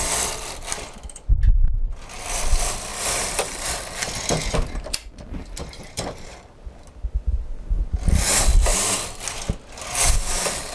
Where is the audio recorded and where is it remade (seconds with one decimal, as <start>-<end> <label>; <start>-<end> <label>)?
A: 0.0-2.9 recorded; 2.9-3.7 remade; 3.7-5.4 recorded; 5.4-6.9 remade; 6.9-10.7 recorded